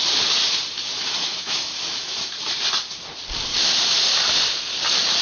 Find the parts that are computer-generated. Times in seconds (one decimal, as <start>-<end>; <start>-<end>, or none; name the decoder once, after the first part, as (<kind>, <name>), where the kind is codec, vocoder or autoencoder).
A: 1.0-2.3 (autoencoder, DAC-VAE)